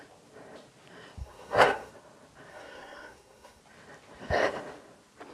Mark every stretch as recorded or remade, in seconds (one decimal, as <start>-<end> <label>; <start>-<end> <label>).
0.0-1.2 recorded; 1.2-1.9 remade; 1.9-2.5 recorded; 2.5-3.6 remade; 3.6-5.3 recorded